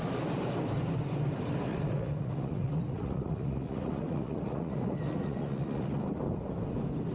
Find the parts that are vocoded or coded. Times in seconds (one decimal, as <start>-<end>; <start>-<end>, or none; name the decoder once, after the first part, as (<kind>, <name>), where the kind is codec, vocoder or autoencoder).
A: 1.7-6.0 (vocoder, Vocos)